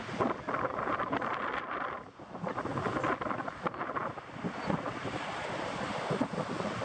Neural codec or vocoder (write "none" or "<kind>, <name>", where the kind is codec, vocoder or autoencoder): none